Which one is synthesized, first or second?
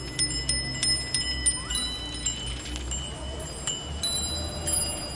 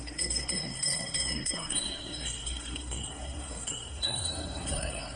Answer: second